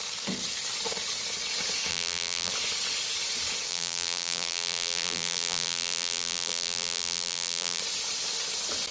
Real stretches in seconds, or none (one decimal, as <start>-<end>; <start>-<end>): 0.0-1.9; 2.5-3.7; 7.8-8.9